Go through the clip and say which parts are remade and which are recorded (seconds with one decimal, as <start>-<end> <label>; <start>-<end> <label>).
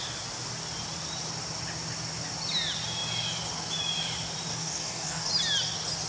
0.0-4.5 recorded; 4.5-5.3 remade; 5.3-6.1 recorded